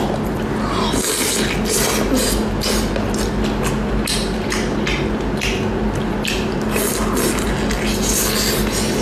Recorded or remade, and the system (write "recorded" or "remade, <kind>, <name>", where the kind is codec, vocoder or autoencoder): recorded